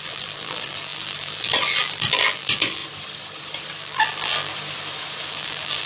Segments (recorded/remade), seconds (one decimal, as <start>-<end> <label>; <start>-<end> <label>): 0.0-2.8 remade; 2.8-3.8 recorded; 3.8-4.5 remade; 4.5-5.3 recorded; 5.3-5.9 remade